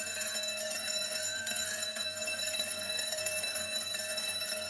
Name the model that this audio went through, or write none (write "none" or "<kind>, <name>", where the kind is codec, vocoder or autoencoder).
codec, SNAC